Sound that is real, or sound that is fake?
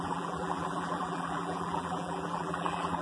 fake